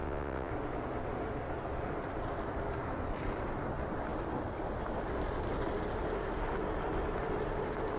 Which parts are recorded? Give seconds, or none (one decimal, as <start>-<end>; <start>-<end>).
0.5-8.0